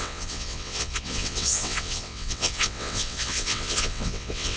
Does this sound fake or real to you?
fake